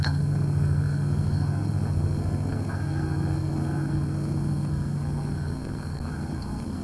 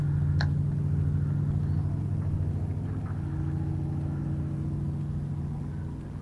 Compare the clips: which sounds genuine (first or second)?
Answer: second